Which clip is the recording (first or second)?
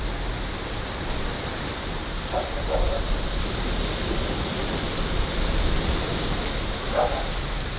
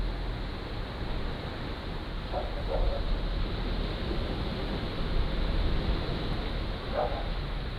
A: second